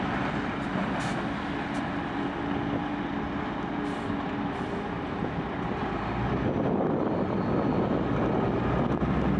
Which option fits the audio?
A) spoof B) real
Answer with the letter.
B